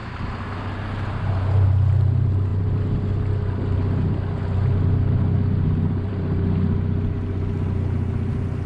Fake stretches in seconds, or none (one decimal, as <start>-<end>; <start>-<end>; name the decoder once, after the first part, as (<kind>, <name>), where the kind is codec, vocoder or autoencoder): none